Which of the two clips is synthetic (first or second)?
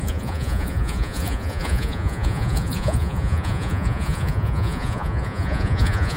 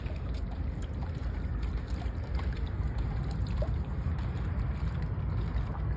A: first